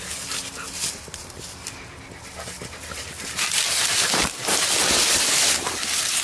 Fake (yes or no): no